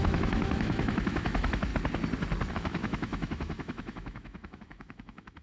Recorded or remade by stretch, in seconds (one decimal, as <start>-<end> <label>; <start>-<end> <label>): 0.0-1.7 remade; 1.7-2.5 recorded; 2.5-5.4 remade